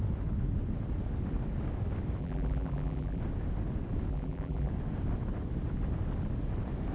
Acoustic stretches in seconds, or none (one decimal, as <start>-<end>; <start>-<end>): 0.0-2.2; 3.2-4.1; 4.7-6.9